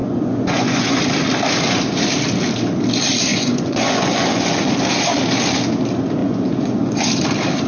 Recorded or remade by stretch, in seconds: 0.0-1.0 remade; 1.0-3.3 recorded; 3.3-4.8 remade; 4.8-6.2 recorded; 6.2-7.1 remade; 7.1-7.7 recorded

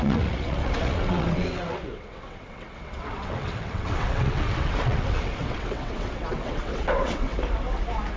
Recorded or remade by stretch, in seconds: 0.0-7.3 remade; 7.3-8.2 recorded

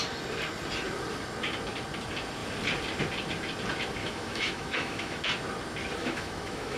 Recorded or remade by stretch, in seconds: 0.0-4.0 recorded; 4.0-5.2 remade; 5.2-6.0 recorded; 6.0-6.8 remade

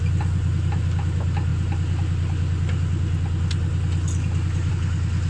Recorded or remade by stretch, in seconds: 0.0-5.3 recorded